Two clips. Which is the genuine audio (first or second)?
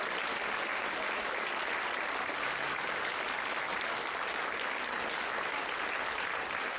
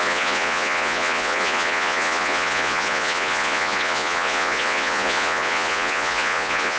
first